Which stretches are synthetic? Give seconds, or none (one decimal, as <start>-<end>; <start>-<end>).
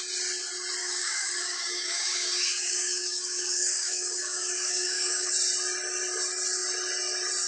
0.8-5.3